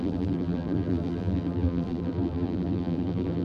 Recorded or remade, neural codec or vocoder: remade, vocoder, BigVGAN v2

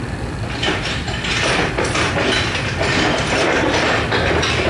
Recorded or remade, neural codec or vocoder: recorded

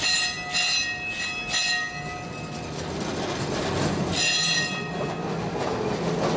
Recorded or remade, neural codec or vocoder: recorded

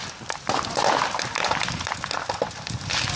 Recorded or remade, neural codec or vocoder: recorded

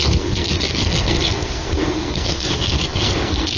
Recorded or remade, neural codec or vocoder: remade, codec, SNAC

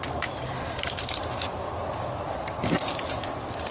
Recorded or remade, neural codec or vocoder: recorded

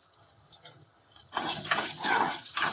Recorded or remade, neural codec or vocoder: remade, vocoder, HiFi-GAN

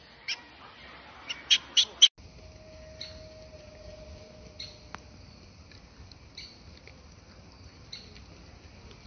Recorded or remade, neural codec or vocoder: recorded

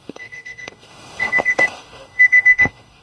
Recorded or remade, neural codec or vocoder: remade, codec, DAC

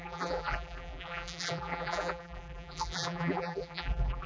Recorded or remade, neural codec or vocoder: remade, vocoder, BigVGAN v2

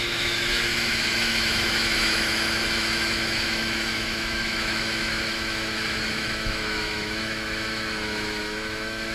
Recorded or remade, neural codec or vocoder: remade, autoencoder, DAC-VAE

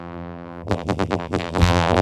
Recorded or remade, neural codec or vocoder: remade, vocoder, BigVGAN v2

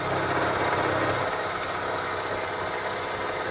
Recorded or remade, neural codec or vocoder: recorded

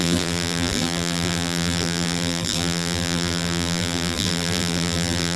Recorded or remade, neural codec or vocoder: remade, vocoder, BigVGAN v2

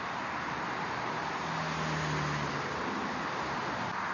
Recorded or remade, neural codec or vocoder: recorded